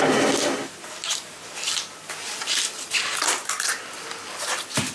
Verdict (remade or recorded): recorded